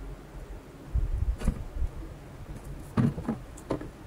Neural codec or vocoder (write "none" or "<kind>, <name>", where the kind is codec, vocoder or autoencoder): none